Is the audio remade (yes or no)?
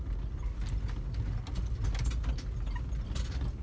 no